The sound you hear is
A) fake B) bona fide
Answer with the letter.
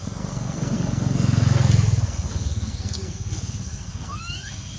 A